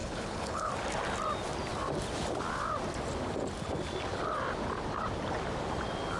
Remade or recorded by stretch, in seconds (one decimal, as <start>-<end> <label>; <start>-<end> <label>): 0.0-0.7 remade; 0.7-6.2 recorded